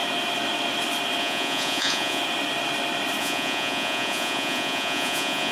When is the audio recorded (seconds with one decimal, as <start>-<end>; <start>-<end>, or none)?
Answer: 0.0-1.2; 2.2-3.2